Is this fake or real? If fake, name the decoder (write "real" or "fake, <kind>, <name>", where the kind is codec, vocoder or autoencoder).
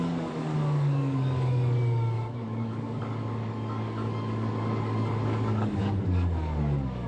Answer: fake, codec, DAC